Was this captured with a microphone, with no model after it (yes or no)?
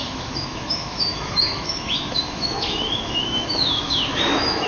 no